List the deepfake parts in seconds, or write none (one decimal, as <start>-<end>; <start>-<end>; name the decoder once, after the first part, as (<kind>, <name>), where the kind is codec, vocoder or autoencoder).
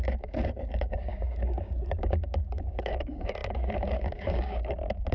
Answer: 0.0-5.1 (codec, DAC)